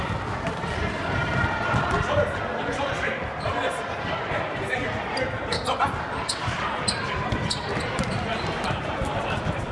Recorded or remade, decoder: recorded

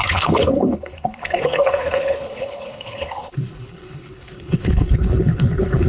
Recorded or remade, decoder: remade, codec, HILCodec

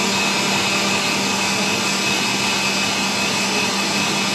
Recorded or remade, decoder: recorded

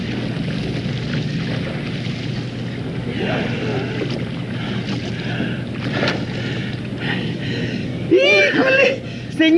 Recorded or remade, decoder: recorded